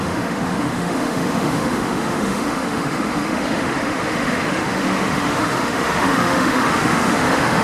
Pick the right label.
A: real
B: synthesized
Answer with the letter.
B